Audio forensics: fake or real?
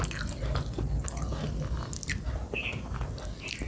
real